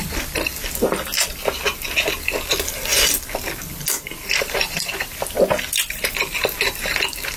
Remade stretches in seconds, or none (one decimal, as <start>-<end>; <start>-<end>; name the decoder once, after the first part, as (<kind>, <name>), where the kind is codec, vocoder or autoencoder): none